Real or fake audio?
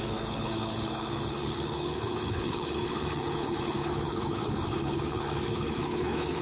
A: fake